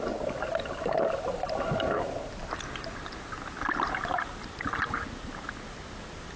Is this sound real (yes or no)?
yes